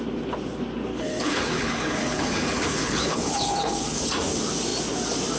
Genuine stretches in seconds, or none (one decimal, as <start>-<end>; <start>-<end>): 0.0-0.9; 4.1-5.4